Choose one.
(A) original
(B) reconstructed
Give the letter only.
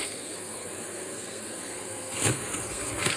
B